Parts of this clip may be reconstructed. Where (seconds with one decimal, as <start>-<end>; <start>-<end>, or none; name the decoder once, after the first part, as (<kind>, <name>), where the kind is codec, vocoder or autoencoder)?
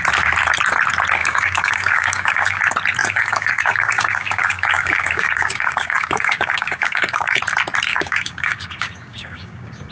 1.2-2.6 (codec, DAC); 3.0-7.4; 7.9-9.9